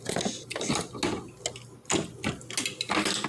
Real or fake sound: real